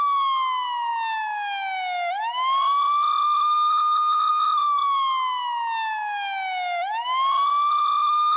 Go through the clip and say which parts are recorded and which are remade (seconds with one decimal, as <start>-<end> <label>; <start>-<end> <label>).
0.0-8.4 recorded